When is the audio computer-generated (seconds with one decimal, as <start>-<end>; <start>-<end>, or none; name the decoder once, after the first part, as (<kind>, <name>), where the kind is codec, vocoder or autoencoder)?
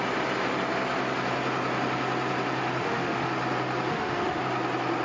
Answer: 2.8-3.3 (autoencoder, DAC-VAE); 3.9-4.4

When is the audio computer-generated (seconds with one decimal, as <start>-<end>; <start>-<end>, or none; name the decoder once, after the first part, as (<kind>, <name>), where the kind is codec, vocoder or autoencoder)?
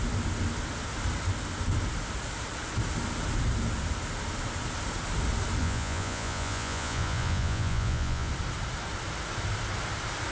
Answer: 5.6-8.3 (vocoder, Vocos)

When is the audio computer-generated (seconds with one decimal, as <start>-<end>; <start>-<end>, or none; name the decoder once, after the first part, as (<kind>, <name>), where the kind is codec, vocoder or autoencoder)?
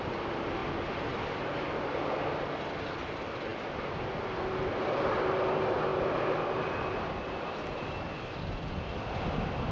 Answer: none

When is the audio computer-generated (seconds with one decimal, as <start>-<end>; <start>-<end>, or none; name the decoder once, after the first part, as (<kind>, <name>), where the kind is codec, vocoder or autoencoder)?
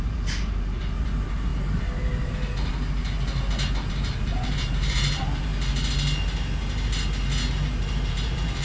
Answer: 0.0-2.7 (vocoder, BigVGAN v2); 3.9-5.5; 7.5-8.6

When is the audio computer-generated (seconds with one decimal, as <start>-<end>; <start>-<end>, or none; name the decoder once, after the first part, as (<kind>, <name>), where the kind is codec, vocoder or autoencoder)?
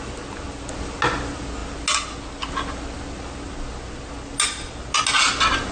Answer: none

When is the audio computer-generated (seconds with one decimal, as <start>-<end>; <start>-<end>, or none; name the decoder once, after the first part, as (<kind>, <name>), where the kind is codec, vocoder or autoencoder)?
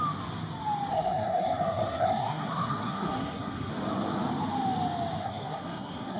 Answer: 0.9-3.7 (codec, SNAC); 5.2-6.2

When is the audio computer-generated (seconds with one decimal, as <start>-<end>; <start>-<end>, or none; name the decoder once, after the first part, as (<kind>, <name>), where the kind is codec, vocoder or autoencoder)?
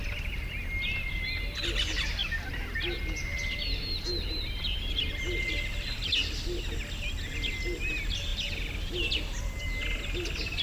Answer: none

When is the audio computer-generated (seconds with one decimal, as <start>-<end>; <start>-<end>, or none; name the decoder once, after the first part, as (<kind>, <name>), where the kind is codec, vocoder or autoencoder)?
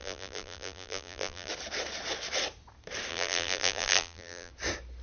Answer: 0.0-1.5 (vocoder, BigVGAN v2); 3.1-4.5